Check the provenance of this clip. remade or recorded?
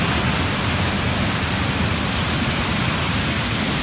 recorded